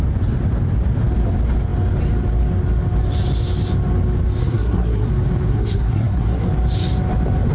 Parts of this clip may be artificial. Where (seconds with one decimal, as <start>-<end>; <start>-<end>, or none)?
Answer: 4.4-5.1; 5.5-6.5